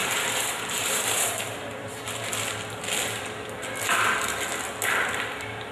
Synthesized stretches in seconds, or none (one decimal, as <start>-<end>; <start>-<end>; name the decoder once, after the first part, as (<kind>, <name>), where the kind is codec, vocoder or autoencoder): 0.0-2.0 (vocoder, BigVGAN v2)